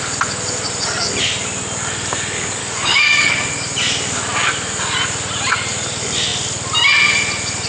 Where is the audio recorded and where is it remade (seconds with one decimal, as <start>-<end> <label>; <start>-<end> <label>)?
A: 0.0-2.6 recorded; 2.6-3.5 remade; 3.5-7.7 recorded